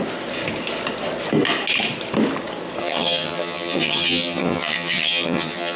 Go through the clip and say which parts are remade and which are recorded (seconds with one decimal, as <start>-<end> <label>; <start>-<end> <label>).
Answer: 0.0-2.8 recorded; 2.8-5.8 remade

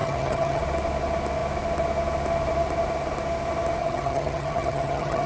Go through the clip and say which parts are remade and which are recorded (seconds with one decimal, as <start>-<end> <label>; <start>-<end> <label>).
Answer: 0.0-0.6 remade; 0.6-3.8 recorded; 3.8-5.3 remade

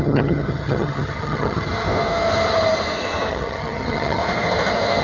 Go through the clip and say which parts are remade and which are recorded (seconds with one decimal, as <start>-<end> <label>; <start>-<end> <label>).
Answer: 0.0-1.7 remade; 1.7-3.3 recorded; 3.3-4.2 remade; 4.2-5.0 recorded

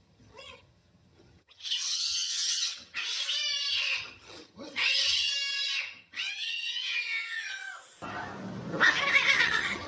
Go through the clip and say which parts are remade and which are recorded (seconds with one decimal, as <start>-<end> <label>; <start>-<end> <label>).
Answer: 0.0-3.0 remade; 3.0-3.7 recorded; 3.7-5.3 remade; 5.3-5.8 recorded; 5.8-7.6 remade; 7.6-9.4 recorded; 9.4-9.9 remade